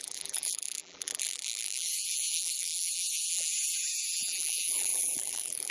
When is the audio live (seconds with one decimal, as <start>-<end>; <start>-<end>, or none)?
none